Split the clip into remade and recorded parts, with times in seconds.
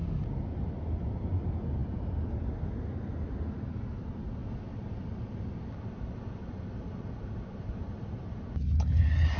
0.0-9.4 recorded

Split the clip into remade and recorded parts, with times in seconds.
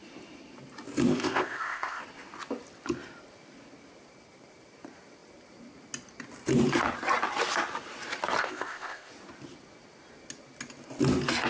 0.0-1.1 recorded; 1.1-2.0 remade; 2.0-8.4 recorded; 8.4-9.1 remade; 9.1-11.5 recorded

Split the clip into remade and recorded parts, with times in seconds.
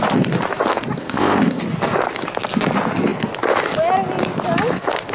0.0-1.0 recorded; 1.0-1.6 remade; 1.6-5.1 recorded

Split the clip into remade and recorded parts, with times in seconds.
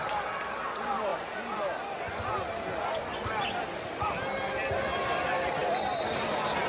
0.0-6.7 recorded